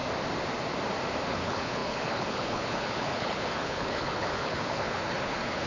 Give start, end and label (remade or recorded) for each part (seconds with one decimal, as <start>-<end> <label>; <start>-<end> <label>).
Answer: 0.0-1.3 recorded; 1.3-5.7 remade

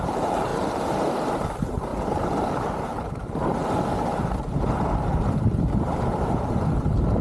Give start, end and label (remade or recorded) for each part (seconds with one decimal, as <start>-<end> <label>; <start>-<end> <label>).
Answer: 0.0-0.5 remade; 0.5-1.1 recorded; 1.1-1.9 remade; 1.9-2.5 recorded; 2.5-7.2 remade

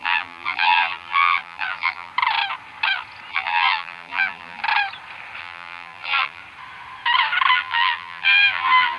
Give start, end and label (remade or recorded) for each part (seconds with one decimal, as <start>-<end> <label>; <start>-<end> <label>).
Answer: 0.0-2.1 remade; 2.1-3.3 recorded; 3.3-4.6 remade; 4.6-5.4 recorded; 5.4-6.4 remade; 6.4-7.5 recorded; 7.5-9.0 remade

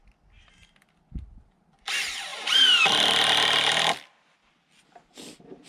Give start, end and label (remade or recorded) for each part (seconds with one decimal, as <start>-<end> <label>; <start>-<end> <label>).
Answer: 0.0-5.7 recorded

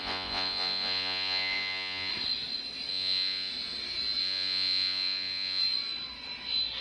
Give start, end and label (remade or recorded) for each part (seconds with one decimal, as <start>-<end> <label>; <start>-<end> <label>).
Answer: 0.0-2.1 remade; 2.1-2.9 recorded; 2.9-3.5 remade; 3.5-4.2 recorded; 4.2-5.6 remade; 5.6-6.8 recorded

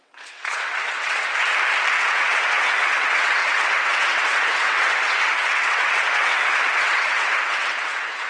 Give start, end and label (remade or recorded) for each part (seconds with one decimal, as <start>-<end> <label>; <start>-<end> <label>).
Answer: 0.0-1.3 remade; 1.3-1.9 recorded; 1.9-8.3 remade

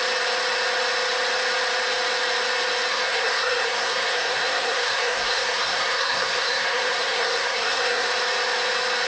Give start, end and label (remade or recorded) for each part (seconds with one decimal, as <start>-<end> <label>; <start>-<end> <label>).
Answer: 0.0-2.9 recorded; 2.9-8.1 remade; 8.1-9.1 recorded

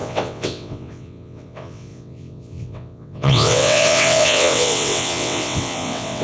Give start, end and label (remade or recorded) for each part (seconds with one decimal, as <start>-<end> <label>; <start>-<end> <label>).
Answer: 0.0-6.2 remade